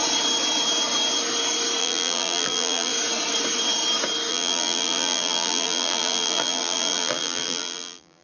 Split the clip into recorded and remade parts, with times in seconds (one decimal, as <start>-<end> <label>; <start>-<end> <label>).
0.0-1.8 recorded; 1.8-2.9 remade; 2.9-4.3 recorded; 4.3-8.2 remade